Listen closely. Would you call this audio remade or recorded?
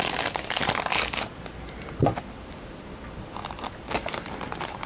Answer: recorded